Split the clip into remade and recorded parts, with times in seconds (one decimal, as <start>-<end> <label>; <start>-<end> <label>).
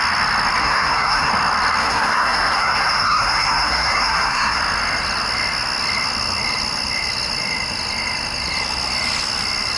0.0-0.6 recorded; 0.6-1.3 remade; 1.3-1.8 recorded; 1.8-4.6 remade; 4.6-9.8 recorded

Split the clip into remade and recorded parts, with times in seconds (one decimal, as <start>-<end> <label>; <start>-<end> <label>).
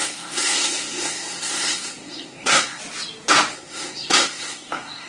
0.0-2.8 remade; 2.8-3.5 recorded; 3.5-5.1 remade